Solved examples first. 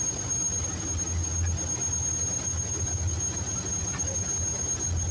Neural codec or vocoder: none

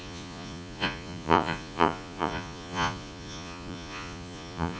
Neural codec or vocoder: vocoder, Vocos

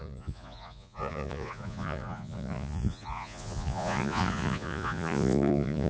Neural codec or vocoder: vocoder, Vocos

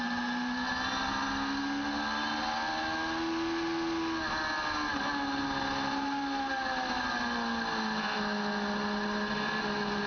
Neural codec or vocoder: none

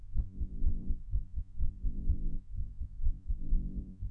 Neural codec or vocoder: vocoder, Vocos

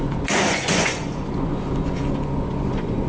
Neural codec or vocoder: vocoder, Vocos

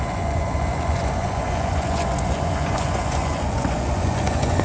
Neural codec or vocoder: vocoder, Vocos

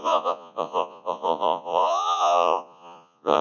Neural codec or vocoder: vocoder, Vocos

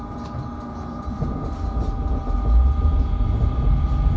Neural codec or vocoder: none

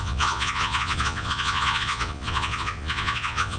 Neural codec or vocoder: vocoder, Vocos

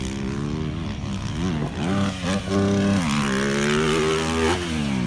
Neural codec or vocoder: none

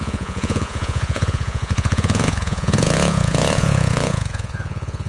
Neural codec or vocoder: vocoder, Vocos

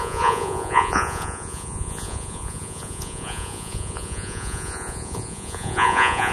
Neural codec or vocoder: vocoder, Vocos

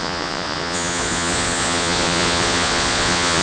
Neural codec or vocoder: vocoder, Vocos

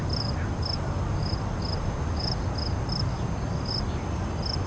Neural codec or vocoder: none